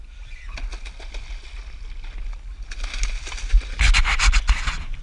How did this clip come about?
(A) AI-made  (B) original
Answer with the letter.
B